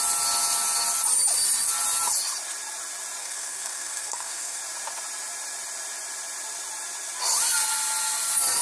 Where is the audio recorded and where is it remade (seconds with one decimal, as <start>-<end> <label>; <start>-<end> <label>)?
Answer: 0.0-3.2 recorded; 3.2-4.6 remade; 4.6-8.6 recorded